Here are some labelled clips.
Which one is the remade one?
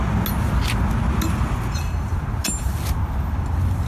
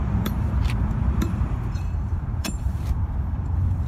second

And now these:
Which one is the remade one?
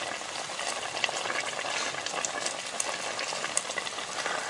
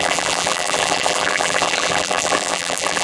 second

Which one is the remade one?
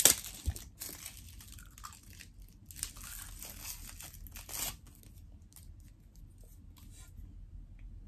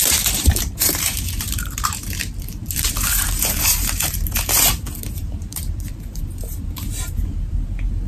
second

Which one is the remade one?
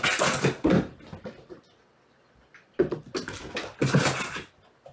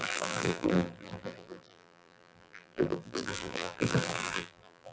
second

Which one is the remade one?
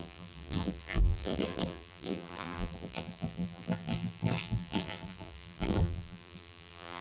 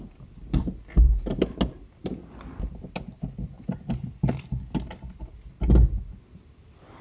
first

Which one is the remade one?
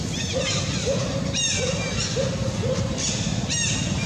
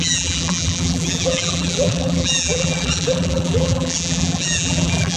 second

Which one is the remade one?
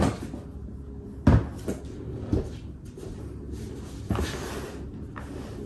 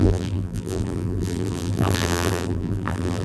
second